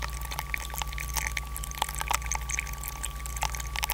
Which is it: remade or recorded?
recorded